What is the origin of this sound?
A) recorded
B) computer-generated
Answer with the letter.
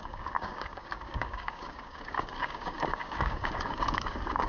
B